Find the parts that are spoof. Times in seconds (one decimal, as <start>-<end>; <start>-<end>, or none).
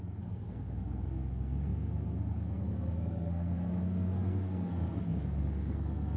0.0-6.2